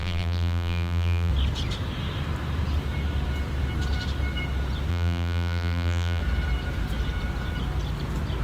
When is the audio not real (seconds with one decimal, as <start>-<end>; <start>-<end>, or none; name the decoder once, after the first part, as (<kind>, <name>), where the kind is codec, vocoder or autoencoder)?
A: 0.0-1.3 (vocoder, BigVGAN v2); 4.9-6.2